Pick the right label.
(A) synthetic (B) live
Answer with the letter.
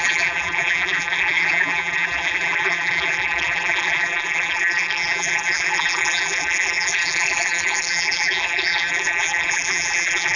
A